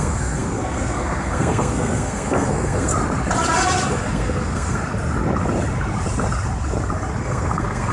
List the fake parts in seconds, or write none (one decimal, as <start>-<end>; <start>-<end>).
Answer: 0.0-2.9; 3.9-4.8; 7.2-7.9